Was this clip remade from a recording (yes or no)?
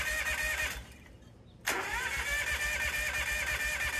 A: no